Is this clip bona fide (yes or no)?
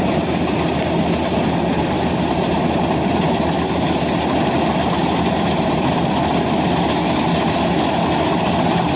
yes